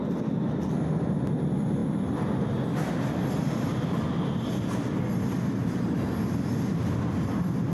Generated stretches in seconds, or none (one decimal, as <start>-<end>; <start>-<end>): none